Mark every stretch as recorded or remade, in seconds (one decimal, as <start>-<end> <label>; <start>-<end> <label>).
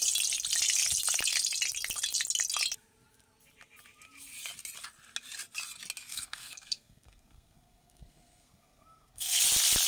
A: 0.0-6.1 recorded; 6.1-9.4 remade; 9.4-9.9 recorded